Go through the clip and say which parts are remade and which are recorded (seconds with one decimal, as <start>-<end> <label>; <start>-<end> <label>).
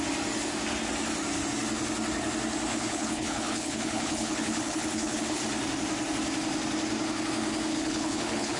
0.0-2.7 recorded; 2.7-5.4 remade; 5.4-7.7 recorded; 7.7-8.6 remade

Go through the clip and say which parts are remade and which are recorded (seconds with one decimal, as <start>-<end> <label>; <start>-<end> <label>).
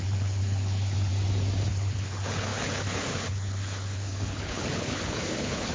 0.0-1.1 remade; 1.1-1.7 recorded; 1.7-5.7 remade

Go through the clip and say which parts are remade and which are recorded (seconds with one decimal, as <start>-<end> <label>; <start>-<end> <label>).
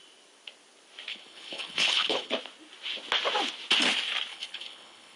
0.0-1.1 recorded; 1.1-2.3 remade; 2.3-4.3 recorded; 4.3-5.2 remade